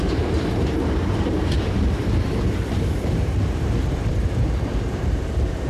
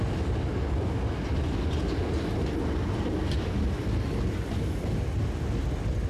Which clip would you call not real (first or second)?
first